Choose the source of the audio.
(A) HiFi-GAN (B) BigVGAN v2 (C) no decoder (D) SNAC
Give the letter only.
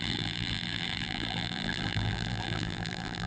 B